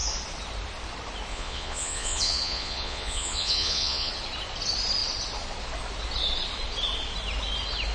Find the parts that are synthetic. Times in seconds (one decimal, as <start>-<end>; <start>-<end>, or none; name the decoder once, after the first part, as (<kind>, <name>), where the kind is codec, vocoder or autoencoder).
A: 1.3-4.1 (vocoder, Vocos)